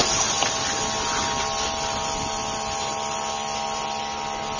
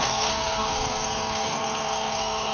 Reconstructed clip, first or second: second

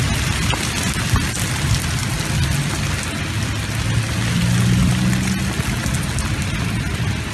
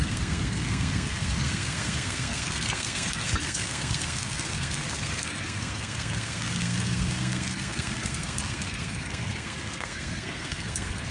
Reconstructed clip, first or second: second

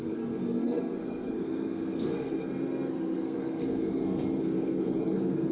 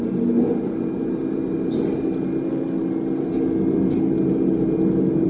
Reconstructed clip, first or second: first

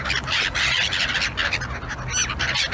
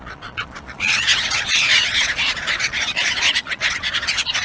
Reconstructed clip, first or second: second